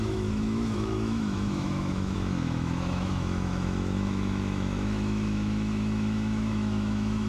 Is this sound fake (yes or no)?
yes